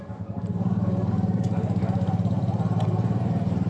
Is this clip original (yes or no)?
no